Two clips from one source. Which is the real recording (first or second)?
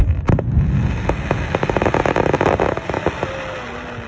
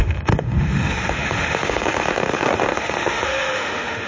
first